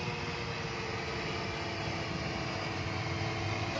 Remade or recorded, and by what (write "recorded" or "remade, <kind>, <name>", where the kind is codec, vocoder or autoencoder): recorded